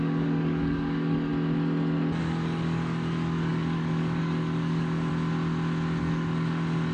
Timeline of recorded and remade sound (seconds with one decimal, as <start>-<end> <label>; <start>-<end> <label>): 0.0-1.3 remade; 1.3-2.2 recorded; 2.2-5.1 remade; 5.1-6.0 recorded; 6.0-6.9 remade